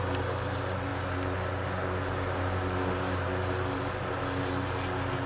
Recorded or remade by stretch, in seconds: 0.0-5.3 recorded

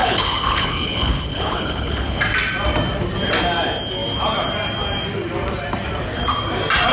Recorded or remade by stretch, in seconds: 0.0-2.2 remade; 2.2-6.9 recorded

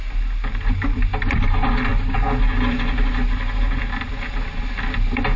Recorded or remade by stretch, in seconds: 0.0-5.4 recorded